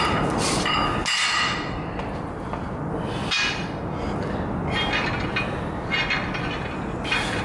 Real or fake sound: real